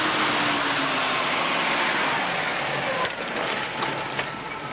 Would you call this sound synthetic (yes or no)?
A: no